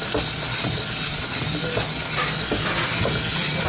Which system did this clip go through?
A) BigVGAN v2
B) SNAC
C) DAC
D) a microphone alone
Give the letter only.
D